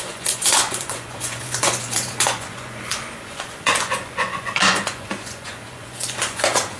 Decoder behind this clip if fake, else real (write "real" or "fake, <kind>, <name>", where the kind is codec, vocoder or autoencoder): fake, vocoder, Vocos